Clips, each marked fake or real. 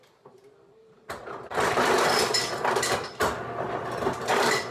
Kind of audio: fake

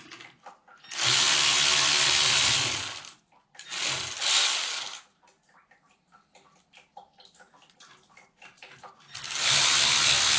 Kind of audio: real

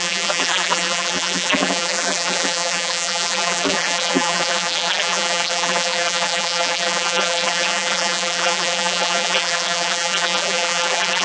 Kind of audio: fake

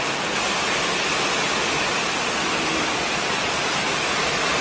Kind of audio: fake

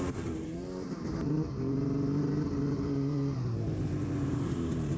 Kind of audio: fake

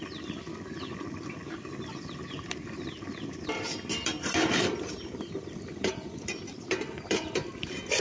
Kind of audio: fake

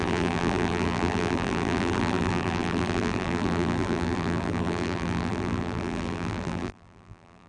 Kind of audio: fake